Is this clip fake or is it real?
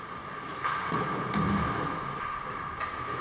real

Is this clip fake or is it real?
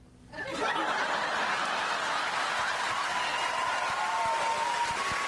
real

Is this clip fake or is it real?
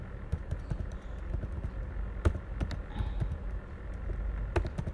real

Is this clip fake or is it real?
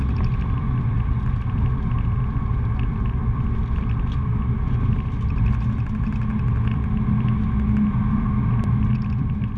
real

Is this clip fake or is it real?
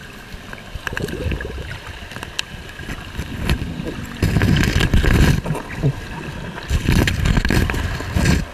real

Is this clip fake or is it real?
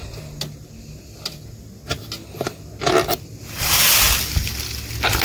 real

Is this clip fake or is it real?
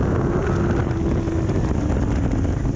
real